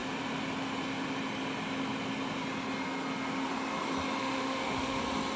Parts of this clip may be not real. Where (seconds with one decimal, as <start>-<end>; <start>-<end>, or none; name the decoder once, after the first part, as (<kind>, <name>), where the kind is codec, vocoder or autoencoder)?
4.2-5.0 (autoencoder, DAC-VAE)